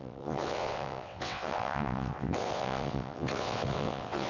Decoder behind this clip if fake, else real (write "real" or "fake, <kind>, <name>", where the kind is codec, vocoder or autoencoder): fake, vocoder, WaveNeXt